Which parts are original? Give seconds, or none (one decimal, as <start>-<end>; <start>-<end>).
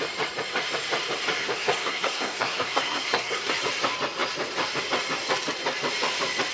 0.0-1.4; 3.5-6.5